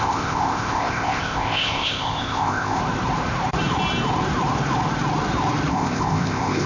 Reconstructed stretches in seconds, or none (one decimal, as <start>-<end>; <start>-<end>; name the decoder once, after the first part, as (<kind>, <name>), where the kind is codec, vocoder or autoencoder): 0.0-2.8 (codec, ZipCodec); 5.7-6.7